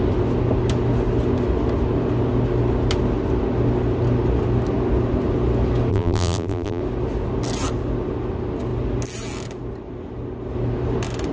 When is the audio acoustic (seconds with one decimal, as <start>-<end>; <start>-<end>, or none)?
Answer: 0.0-5.9; 6.8-11.3